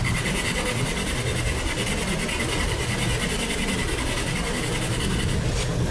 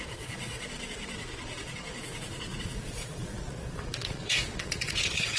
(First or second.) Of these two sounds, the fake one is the second